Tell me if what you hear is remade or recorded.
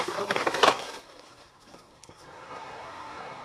remade